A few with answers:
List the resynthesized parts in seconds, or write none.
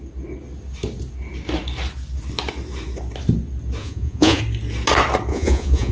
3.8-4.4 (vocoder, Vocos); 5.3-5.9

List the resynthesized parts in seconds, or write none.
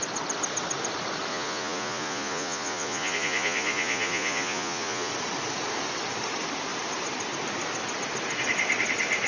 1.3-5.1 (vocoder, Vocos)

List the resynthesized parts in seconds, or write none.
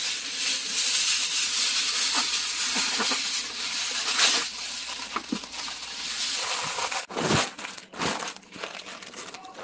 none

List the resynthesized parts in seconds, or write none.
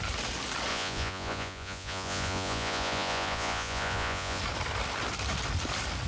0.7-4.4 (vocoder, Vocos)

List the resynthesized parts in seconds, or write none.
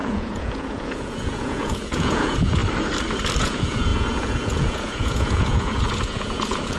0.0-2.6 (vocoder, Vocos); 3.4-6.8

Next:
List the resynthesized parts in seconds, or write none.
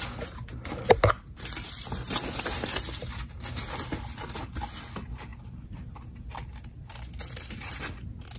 none